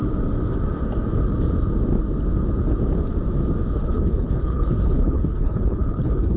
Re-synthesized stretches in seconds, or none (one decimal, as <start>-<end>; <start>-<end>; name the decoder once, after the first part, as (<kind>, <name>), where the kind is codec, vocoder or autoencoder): 3.8-6.4 (codec, HILCodec)

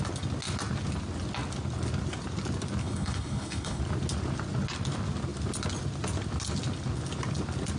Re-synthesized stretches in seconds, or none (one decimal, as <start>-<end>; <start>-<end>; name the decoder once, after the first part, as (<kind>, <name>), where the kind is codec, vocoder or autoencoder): 2.8-3.8 (codec, HILCodec)

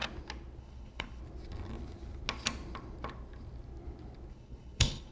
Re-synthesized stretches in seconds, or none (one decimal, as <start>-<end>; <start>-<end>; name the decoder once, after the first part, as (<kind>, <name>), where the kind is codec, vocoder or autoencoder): 0.6-1.2 (codec, HILCodec); 4.3-5.1

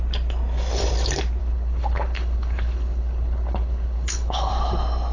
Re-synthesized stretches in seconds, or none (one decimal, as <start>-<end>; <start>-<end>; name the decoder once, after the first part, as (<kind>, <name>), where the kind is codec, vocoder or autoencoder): 1.4-4.5 (codec, HILCodec)